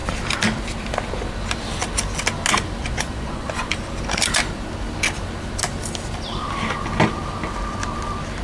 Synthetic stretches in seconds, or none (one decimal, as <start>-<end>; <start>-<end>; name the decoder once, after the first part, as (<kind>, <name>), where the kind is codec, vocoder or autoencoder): 2.8-3.7 (vocoder, Vocos)